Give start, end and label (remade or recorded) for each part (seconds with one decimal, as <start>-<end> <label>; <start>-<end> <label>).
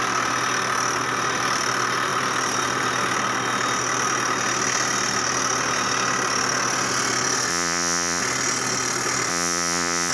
0.0-7.5 recorded; 7.5-8.2 remade; 8.2-9.3 recorded; 9.3-10.1 remade